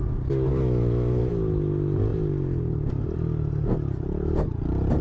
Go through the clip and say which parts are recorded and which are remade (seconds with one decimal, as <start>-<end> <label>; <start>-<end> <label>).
0.0-0.5 recorded; 0.5-1.2 remade; 1.2-5.0 recorded